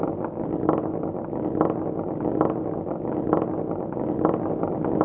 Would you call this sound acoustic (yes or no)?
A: yes